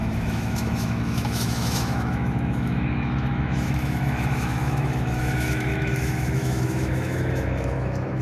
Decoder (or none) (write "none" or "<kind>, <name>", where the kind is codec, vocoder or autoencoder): autoencoder, DAC-VAE